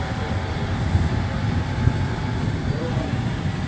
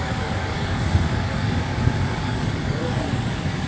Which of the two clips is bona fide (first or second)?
first